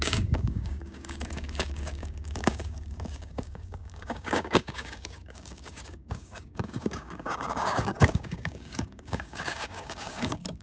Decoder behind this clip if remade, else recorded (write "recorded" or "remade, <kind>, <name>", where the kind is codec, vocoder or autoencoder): remade, codec, DAC